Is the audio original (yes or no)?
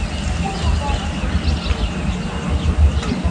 yes